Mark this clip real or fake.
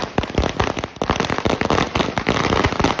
real